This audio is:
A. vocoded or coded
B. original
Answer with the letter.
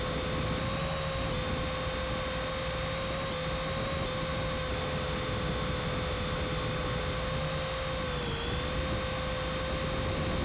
B